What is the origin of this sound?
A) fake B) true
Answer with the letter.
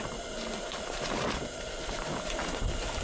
B